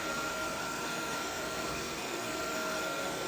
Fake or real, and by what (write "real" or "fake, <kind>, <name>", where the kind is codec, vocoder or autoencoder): fake, codec, SNAC